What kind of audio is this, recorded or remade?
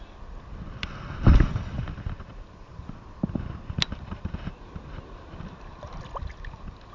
recorded